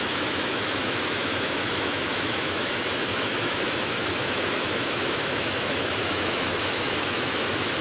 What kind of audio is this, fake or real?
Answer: fake